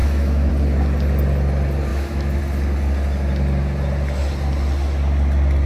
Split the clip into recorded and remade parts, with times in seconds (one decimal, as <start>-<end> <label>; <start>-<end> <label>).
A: 0.0-0.5 remade; 0.5-1.9 recorded; 1.9-2.4 remade; 2.4-5.7 recorded